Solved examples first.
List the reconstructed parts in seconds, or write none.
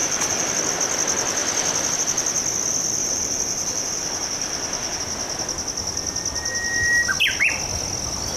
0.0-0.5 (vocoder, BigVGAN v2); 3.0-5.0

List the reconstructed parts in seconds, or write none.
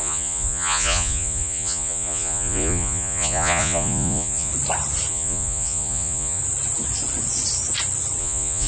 0.0-4.5 (vocoder, Vocos); 5.1-6.4; 8.2-8.7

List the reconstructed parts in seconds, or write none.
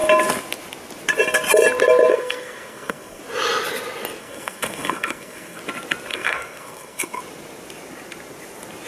2.1-3.2 (codec, SNAC); 4.2-5.6; 6.1-7.2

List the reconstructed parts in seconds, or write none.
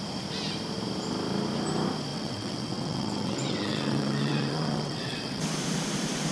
2.1-5.4 (vocoder, WaveNeXt)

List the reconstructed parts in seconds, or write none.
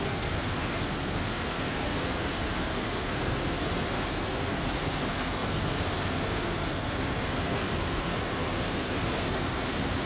0.0-10.1 (codec, SNAC)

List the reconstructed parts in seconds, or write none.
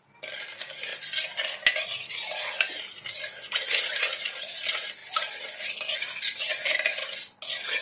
none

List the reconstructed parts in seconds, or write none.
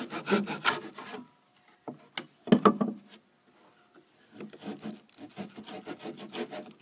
none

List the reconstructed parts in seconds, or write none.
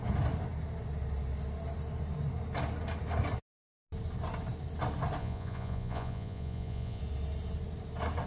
5.2-7.0 (vocoder, Vocos)